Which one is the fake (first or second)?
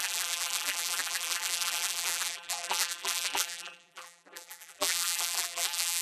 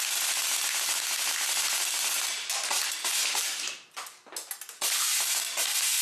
first